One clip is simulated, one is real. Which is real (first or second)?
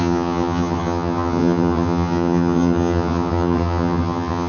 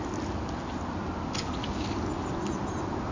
second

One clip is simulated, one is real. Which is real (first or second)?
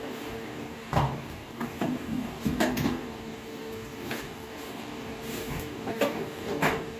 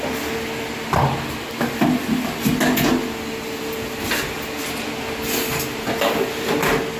second